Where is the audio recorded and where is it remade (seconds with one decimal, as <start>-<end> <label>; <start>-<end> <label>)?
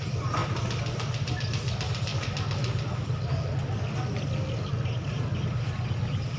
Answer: 0.0-6.4 recorded